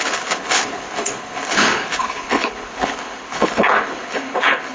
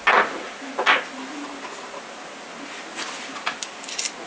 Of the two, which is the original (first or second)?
second